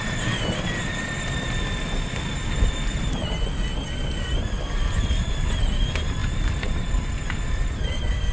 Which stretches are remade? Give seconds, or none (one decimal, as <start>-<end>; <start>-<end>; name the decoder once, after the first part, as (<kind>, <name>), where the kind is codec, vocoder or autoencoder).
none